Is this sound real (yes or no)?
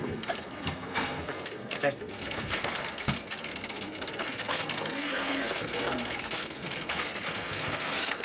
no